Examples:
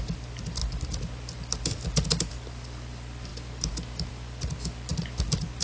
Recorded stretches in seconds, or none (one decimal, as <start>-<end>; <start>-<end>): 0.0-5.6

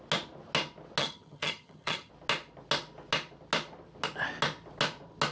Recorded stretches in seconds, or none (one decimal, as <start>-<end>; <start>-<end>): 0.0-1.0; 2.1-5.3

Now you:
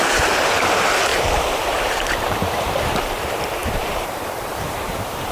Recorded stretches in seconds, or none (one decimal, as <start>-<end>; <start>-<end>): 0.0-1.1; 3.2-3.6

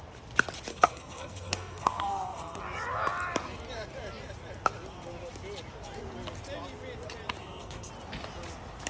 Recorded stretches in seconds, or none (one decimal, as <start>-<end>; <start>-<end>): 0.0-0.7; 2.6-7.4; 7.9-8.9